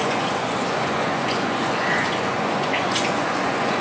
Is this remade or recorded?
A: remade